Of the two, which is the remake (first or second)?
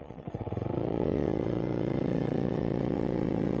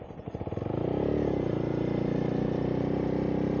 first